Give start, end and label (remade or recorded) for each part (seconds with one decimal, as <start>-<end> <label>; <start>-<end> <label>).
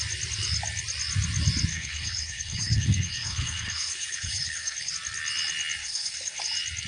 0.0-1.7 recorded; 1.7-4.9 remade; 4.9-5.8 recorded; 5.8-6.4 remade; 6.4-6.9 recorded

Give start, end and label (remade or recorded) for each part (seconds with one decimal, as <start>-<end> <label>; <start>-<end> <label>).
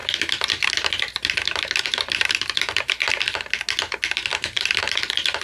0.0-3.2 remade; 3.2-4.3 recorded; 4.3-4.8 remade; 4.8-5.4 recorded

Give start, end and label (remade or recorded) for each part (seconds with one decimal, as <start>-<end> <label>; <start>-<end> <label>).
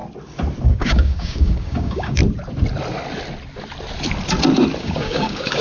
0.0-0.6 recorded; 0.6-2.2 remade; 2.2-4.8 recorded; 4.8-5.6 remade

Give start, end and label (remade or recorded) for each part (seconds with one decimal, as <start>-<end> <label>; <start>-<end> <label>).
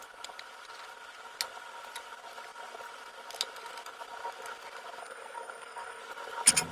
0.0-5.0 recorded; 5.0-6.0 remade; 6.0-6.7 recorded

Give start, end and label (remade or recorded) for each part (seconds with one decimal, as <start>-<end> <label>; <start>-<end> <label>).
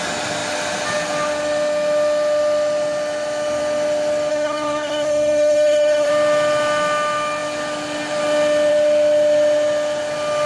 0.0-4.3 recorded; 4.3-6.1 remade; 6.1-10.5 recorded